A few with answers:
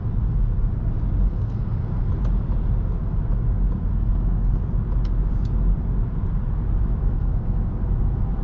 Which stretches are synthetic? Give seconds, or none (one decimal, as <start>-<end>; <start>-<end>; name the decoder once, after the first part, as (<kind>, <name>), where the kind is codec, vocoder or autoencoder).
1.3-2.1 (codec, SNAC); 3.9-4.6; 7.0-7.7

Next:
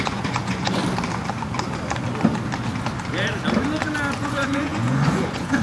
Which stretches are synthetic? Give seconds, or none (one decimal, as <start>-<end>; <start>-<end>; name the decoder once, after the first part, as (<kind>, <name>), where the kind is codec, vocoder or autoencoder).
0.0-0.8 (vocoder, Vocos); 4.2-5.6

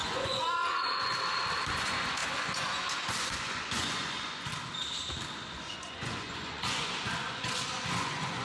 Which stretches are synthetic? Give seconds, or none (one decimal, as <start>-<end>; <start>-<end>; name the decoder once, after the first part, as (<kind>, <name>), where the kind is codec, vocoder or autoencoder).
0.0-1.1 (vocoder, Vocos); 1.7-4.5; 5.5-8.4

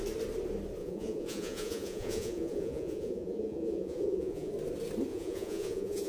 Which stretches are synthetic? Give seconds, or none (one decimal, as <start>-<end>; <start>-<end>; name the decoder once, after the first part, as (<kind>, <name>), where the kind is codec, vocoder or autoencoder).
0.8-4.5 (vocoder, Vocos); 5.1-6.1

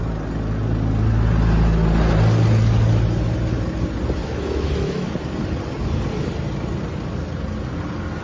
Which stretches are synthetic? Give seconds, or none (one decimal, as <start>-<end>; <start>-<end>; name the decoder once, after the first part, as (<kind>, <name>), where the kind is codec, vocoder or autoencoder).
4.2-5.1 (autoencoder, DAC-VAE)

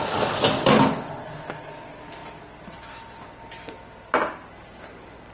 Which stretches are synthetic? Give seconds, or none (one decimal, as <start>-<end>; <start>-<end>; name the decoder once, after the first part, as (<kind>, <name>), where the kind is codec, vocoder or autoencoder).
none

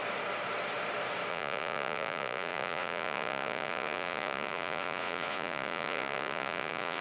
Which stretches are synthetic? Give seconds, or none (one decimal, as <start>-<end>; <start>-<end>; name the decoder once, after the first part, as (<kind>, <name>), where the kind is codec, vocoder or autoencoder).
1.3-7.0 (vocoder, Vocos)